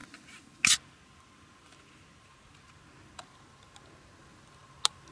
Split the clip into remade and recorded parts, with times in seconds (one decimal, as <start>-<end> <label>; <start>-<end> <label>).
0.0-5.1 recorded